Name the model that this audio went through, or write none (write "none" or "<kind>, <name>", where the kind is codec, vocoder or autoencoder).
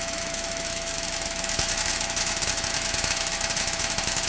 autoencoder, DAC-VAE